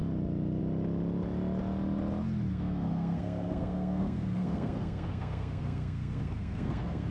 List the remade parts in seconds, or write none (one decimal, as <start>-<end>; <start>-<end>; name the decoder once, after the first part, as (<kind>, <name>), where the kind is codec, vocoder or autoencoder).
2.5-7.1 (codec, SNAC)